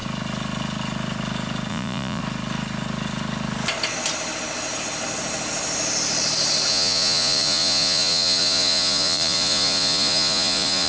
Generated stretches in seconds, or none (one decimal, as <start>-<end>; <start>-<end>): 1.7-2.2; 6.7-10.9